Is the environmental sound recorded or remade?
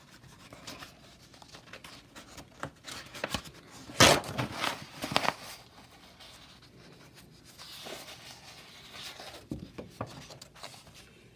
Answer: recorded